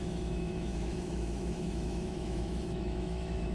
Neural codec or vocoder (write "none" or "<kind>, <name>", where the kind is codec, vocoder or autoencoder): autoencoder, DAC-VAE